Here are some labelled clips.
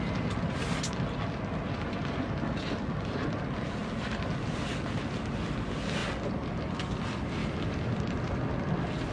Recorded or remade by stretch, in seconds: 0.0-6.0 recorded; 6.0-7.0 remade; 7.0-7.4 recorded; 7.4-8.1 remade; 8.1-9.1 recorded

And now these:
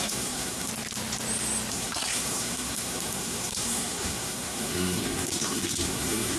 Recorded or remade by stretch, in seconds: 0.0-0.7 remade; 0.7-1.7 recorded; 1.7-6.4 remade

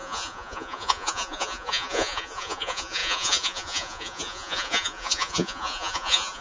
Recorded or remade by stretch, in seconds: 0.0-6.4 remade